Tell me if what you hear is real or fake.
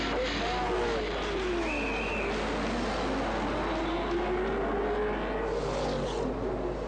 real